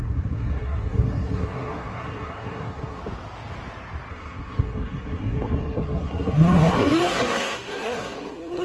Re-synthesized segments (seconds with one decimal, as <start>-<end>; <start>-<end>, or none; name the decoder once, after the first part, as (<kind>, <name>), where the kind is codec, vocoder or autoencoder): 0.0-3.0 (codec, SNAC); 4.1-8.6